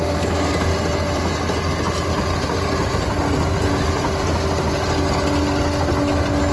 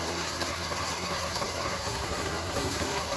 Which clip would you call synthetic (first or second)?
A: second